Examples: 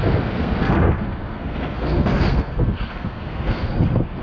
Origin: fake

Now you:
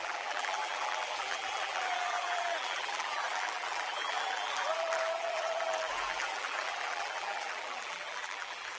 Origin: fake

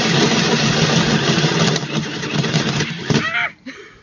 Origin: real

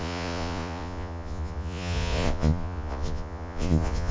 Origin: fake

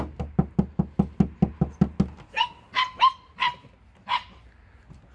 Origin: real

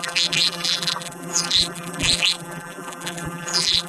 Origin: fake